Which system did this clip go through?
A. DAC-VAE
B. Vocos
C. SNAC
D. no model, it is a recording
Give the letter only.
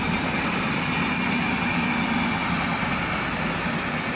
D